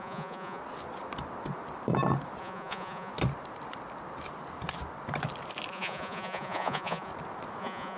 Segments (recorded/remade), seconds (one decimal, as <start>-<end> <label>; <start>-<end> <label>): 0.0-0.6 remade; 0.6-2.4 recorded; 2.4-3.1 remade; 3.1-5.7 recorded; 5.7-7.1 remade; 7.1-7.6 recorded; 7.6-8.0 remade